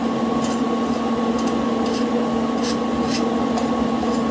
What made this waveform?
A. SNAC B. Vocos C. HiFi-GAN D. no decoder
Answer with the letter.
D